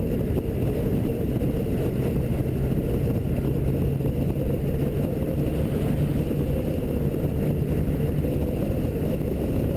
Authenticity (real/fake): real